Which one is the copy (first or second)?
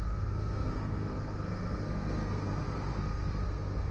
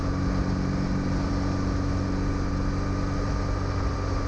first